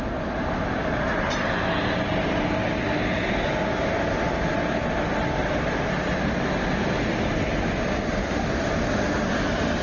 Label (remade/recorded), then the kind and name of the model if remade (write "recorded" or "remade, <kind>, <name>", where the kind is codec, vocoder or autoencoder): recorded